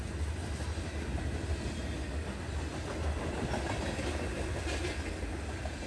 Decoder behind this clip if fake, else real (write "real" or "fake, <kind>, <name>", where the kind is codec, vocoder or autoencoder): real